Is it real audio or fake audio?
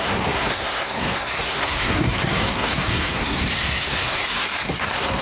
fake